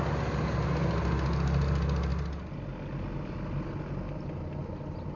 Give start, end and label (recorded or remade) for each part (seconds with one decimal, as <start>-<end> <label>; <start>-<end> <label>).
0.0-5.2 recorded